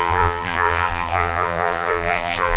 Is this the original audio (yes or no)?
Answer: no